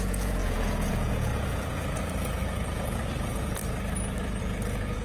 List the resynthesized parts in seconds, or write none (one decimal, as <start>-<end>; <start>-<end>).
0.0-3.6; 4.4-5.0